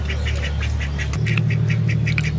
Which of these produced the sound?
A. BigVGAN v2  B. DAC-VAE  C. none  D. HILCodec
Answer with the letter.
C